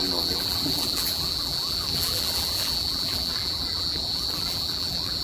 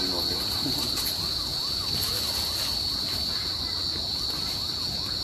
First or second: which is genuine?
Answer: second